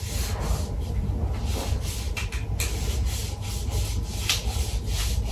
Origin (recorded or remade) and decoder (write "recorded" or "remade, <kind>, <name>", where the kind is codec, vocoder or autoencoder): recorded